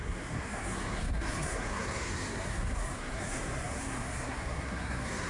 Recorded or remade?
remade